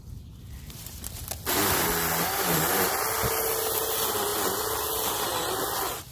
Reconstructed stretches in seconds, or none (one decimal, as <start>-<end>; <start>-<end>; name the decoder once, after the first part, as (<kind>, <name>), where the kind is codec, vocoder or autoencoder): none